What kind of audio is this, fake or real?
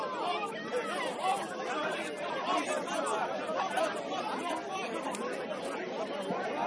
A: real